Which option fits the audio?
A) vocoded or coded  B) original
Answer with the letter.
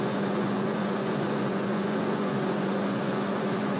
A